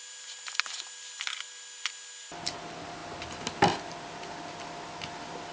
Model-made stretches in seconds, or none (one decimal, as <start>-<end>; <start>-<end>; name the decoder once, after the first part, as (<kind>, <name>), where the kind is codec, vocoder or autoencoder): none